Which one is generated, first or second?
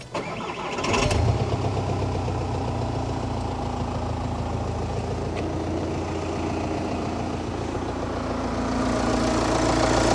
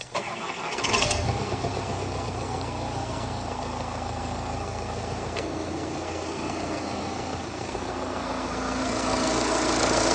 second